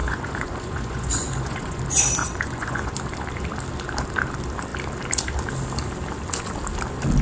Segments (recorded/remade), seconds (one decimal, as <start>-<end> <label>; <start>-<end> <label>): 0.0-1.8 remade; 1.8-2.2 recorded; 2.2-2.9 remade; 2.9-7.2 recorded